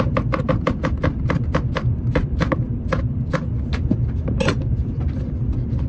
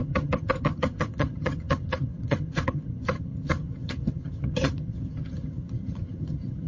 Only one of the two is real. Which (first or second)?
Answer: first